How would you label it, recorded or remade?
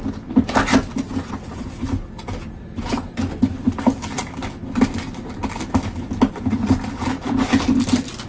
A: recorded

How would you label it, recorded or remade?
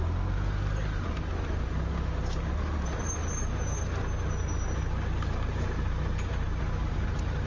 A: recorded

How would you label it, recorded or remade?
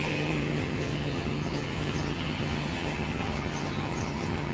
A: remade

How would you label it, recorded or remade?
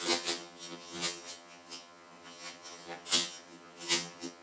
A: remade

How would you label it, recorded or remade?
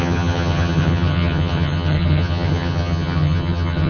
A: remade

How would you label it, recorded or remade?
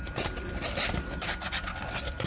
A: recorded